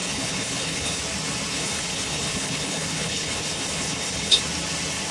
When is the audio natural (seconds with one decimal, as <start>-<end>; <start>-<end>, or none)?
1.0-1.5; 4.4-5.1